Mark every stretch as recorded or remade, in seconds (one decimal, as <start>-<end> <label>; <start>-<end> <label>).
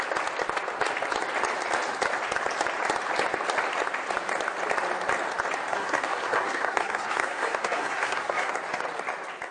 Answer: 0.0-5.7 recorded; 5.7-8.5 remade; 8.5-9.5 recorded